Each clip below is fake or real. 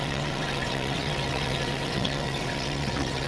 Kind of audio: fake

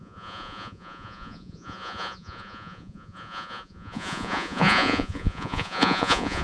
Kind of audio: fake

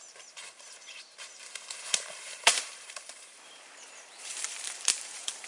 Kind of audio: fake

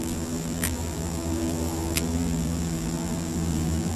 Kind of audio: fake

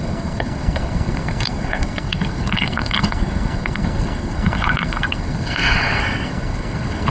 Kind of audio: fake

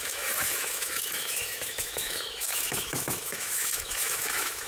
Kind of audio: fake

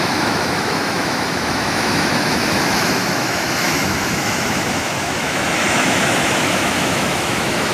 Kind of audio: fake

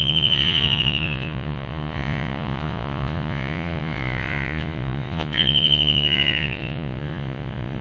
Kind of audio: fake